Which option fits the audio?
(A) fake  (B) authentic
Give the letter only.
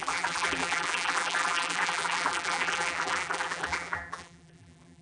A